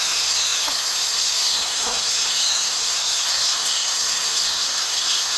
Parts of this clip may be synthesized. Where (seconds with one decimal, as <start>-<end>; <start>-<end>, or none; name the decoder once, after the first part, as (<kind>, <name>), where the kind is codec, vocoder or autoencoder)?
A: 0.0-5.4 (codec, SNAC)